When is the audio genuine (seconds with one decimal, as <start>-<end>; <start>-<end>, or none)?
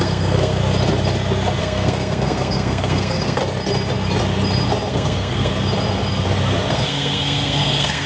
0.6-1.6; 3.4-4.9; 5.5-6.7